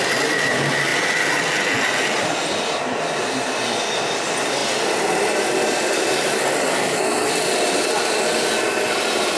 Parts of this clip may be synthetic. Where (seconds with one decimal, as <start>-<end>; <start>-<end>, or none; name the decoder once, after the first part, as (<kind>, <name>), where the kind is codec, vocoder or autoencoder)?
6.7-7.3 (codec, SNAC)